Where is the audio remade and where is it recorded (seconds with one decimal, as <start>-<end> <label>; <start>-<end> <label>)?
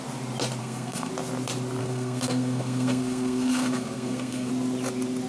0.0-0.6 recorded; 0.6-1.1 remade; 1.1-1.8 recorded; 1.8-4.5 remade; 4.5-5.3 recorded